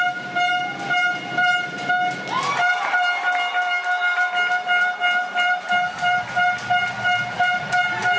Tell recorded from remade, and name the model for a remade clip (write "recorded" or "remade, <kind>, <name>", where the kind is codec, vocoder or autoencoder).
recorded